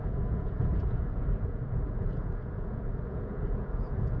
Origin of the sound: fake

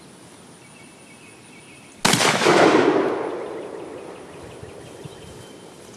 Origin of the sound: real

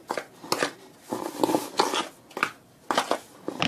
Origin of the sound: real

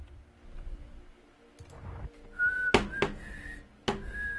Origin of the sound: real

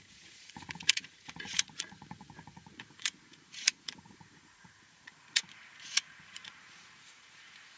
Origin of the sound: fake